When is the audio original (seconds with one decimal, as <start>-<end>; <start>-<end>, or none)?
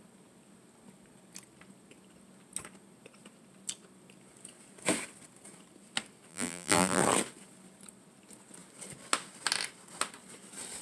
0.0-6.3; 7.0-10.8